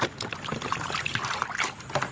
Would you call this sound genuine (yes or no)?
yes